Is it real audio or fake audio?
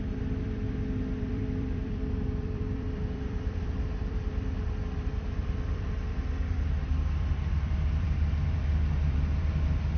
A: fake